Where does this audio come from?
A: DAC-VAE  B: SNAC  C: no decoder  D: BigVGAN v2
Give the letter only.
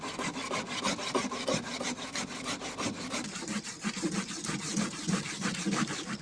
D